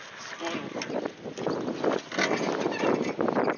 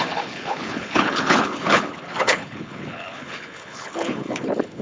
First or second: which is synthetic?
second